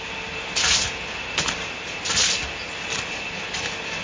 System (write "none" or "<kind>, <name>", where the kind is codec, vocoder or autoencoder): none